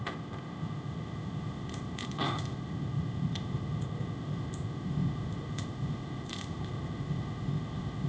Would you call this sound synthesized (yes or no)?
yes